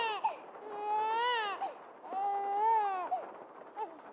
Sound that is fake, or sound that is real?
real